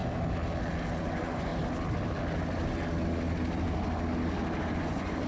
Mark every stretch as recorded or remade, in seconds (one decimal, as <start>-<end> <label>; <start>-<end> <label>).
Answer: 0.0-1.0 recorded; 1.0-1.5 remade; 1.5-4.7 recorded; 4.7-5.3 remade